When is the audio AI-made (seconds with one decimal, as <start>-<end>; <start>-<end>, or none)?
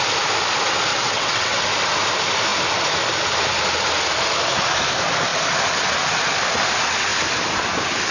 0.9-1.6